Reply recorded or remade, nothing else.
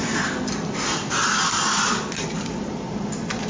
recorded